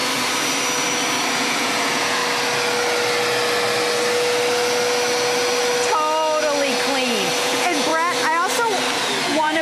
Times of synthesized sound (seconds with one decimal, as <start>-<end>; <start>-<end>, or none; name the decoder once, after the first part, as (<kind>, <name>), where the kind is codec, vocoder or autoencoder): 1.3-2.2 (vocoder, Vocos); 7.4-7.9; 9.2-9.6

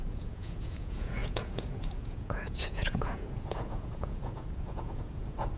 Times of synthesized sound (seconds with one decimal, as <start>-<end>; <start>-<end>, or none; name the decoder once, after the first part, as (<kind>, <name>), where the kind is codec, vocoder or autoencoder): 0.0-5.6 (vocoder, Vocos)